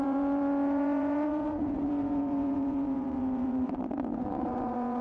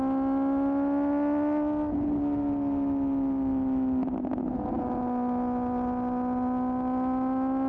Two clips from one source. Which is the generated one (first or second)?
first